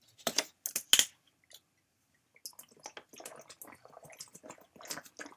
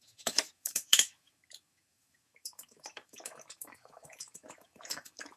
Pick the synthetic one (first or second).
second